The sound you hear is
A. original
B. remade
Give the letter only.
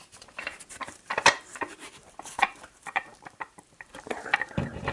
B